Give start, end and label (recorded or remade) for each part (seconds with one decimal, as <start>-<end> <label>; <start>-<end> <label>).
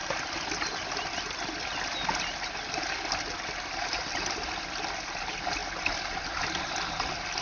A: 0.0-7.4 recorded